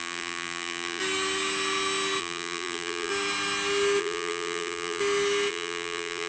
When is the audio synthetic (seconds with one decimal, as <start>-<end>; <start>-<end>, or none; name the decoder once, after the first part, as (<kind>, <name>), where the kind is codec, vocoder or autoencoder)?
0.0-1.0 (vocoder, BigVGAN v2); 2.2-3.1; 4.0-5.0; 5.5-6.3